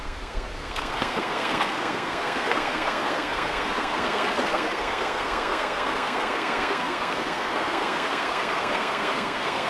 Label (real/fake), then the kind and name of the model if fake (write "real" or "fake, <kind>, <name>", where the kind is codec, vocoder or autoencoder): fake, codec, SNAC